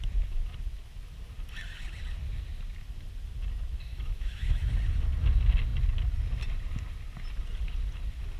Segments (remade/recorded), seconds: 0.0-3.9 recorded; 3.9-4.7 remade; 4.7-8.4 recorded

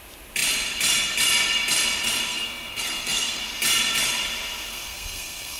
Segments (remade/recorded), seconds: 0.0-2.3 recorded; 2.3-3.4 remade; 3.4-4.7 recorded; 4.7-5.6 remade